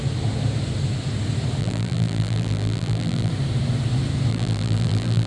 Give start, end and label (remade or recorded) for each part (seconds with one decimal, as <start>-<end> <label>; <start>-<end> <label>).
0.0-1.6 recorded; 1.6-3.3 remade; 3.3-4.3 recorded; 4.3-5.3 remade